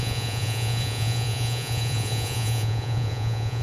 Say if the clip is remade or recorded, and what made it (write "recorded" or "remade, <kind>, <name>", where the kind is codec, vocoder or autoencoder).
remade, vocoder, Vocos